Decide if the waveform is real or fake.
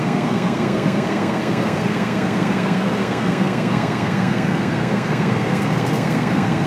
fake